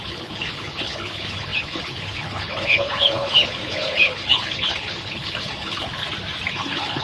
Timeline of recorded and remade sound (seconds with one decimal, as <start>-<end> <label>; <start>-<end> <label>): 0.0-6.0 remade; 6.0-6.5 recorded; 6.5-7.0 remade